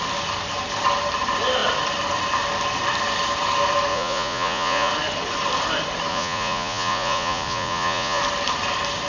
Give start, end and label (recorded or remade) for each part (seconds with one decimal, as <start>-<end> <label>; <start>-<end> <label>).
0.0-3.9 recorded; 3.9-4.9 remade; 4.9-6.1 recorded; 6.1-8.2 remade; 8.2-9.1 recorded